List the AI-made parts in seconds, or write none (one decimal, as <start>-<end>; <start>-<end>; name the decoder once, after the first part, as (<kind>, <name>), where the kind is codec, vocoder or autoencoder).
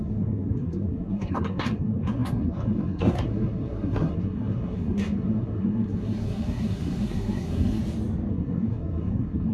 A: 0.0-7.8 (codec, SNAC); 8.3-9.5